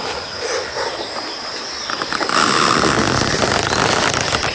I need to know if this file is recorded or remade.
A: recorded